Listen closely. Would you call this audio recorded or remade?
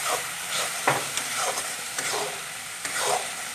remade